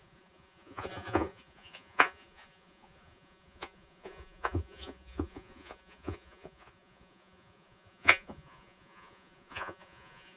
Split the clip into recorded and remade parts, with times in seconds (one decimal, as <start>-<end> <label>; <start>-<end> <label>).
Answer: 0.0-10.4 remade